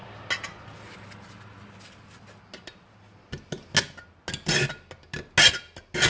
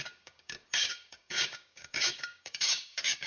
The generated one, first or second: second